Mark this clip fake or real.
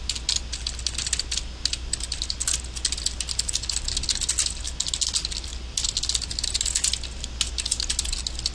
real